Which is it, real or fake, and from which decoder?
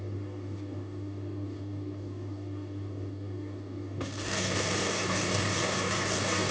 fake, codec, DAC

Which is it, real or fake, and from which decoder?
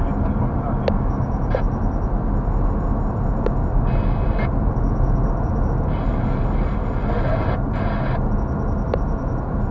real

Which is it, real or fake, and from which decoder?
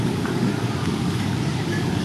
fake, codec, DAC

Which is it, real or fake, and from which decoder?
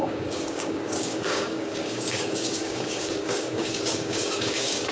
fake, codec, DAC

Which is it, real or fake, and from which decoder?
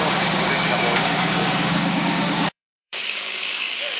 fake, codec, DAC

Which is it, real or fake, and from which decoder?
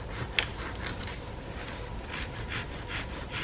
real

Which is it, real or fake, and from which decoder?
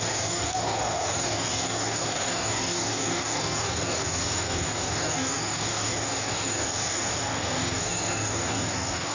fake, codec, DAC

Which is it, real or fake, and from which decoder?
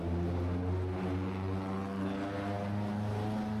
real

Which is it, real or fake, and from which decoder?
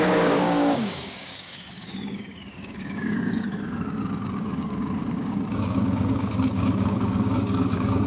fake, codec, DAC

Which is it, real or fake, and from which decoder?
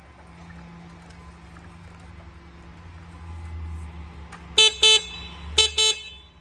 real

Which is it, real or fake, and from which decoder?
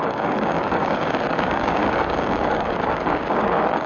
fake, codec, DAC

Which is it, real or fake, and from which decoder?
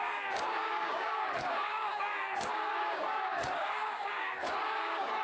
fake, codec, DAC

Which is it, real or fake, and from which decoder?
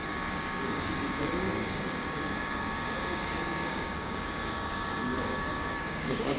fake, codec, DAC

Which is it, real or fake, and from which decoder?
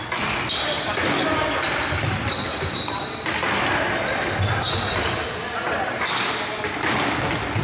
real